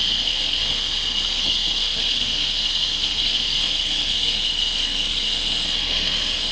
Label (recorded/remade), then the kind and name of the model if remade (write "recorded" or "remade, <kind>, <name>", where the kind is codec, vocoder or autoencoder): remade, codec, SNAC